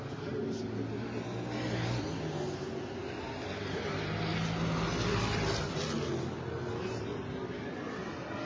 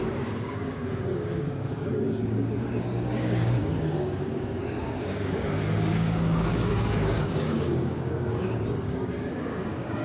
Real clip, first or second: first